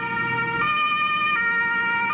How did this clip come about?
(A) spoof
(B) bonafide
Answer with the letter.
B